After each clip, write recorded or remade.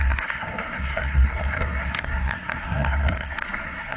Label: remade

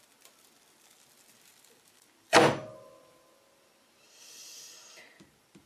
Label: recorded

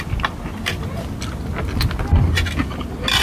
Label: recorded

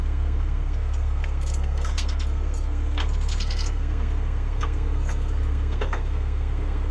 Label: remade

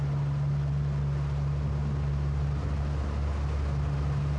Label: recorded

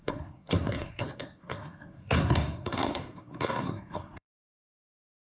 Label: remade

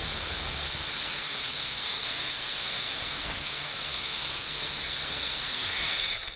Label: remade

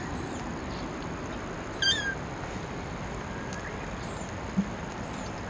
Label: recorded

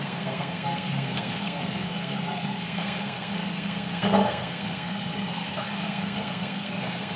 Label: remade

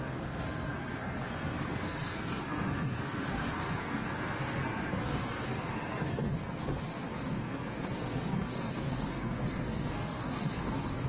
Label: remade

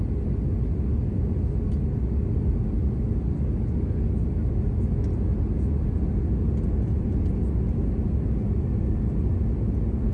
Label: recorded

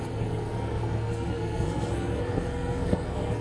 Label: remade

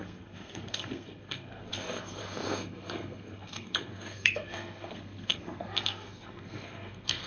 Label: remade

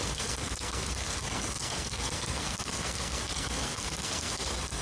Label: remade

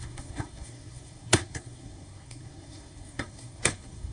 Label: remade